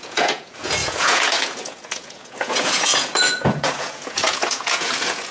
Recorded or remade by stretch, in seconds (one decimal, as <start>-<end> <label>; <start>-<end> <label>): 0.0-5.3 remade